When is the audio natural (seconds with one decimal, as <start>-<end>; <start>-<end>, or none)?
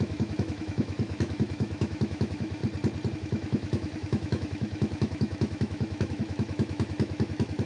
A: 2.6-3.1